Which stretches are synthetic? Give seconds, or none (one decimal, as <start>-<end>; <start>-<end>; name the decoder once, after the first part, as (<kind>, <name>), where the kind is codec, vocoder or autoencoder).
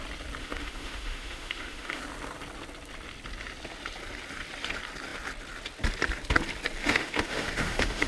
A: 0.4-2.0 (autoencoder, DAC-VAE); 6.8-8.1